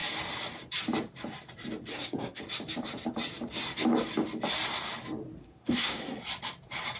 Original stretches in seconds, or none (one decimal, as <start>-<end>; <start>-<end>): 0.0-1.9; 2.4-5.4; 6.2-7.0